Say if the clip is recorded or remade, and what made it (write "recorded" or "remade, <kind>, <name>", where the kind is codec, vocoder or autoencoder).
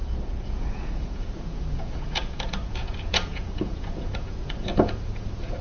remade, vocoder, Vocos